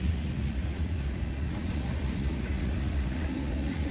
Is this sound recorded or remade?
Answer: remade